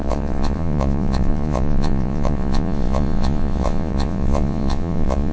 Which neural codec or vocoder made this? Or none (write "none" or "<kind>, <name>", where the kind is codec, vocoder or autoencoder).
vocoder, Vocos